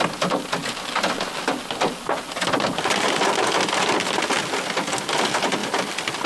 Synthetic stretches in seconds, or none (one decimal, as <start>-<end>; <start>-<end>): none